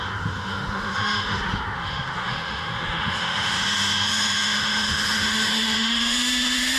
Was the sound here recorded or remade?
remade